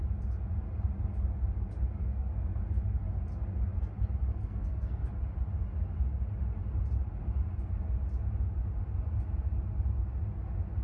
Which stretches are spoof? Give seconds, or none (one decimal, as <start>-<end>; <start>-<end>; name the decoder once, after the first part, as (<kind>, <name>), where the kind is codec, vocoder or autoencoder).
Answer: 2.0-2.6 (codec, SNAC); 4.3-5.1